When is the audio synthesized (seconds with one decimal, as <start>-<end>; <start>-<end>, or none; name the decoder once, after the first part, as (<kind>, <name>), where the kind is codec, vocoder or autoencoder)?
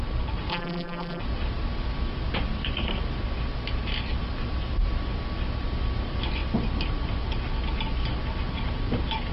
0.5-1.2 (vocoder, BigVGAN v2)